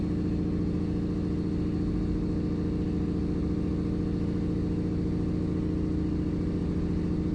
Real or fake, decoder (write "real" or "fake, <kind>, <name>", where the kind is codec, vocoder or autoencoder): real